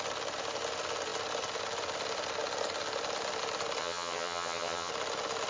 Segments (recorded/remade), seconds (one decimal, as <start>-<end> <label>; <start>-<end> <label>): 0.0-3.8 recorded; 3.8-4.9 remade; 4.9-5.5 recorded